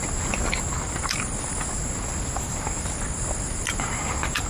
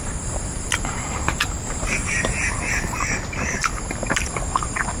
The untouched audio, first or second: first